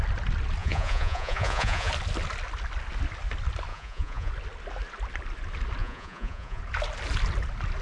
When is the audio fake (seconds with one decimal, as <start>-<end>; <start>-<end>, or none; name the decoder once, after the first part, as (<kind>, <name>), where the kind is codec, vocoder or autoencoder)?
0.6-1.9 (vocoder, Vocos); 3.7-4.3; 5.8-6.6